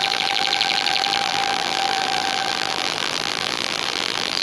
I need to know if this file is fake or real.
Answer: fake